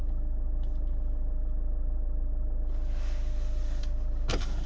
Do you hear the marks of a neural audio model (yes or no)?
yes